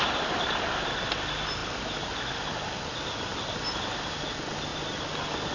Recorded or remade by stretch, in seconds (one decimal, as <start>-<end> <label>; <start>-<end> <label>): 0.0-5.5 recorded